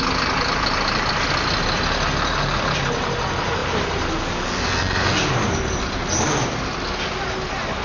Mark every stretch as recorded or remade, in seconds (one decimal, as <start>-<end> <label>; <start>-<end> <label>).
0.0-7.8 recorded